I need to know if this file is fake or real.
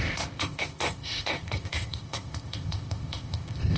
fake